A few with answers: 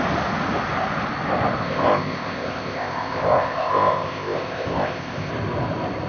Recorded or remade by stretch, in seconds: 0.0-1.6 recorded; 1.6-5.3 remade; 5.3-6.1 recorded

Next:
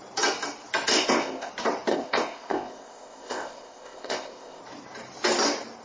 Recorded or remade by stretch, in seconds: 0.0-0.9 recorded; 0.9-1.5 remade; 1.5-1.9 recorded; 1.9-4.6 remade; 4.6-5.8 recorded

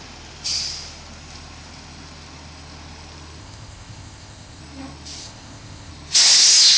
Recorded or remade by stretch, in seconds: 0.0-3.4 recorded; 3.4-4.6 remade; 4.6-5.2 recorded; 5.2-5.9 remade; 5.9-6.8 recorded

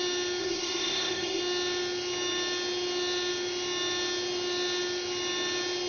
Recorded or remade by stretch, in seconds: 0.0-0.4 recorded; 0.4-1.4 remade; 1.4-5.9 recorded